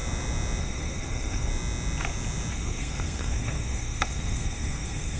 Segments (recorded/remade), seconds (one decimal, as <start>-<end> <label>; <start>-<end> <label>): 0.0-0.6 recorded; 0.6-1.5 remade; 1.5-2.5 recorded; 2.5-5.2 remade